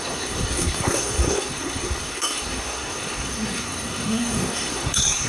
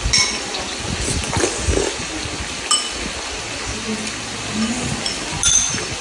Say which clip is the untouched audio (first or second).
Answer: second